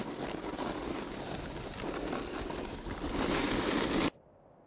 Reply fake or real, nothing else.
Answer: real